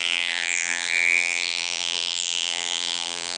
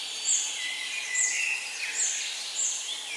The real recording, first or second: second